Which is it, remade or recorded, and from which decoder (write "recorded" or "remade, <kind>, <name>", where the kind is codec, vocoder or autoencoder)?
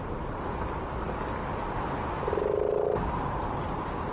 recorded